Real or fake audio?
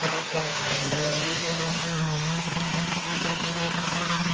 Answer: fake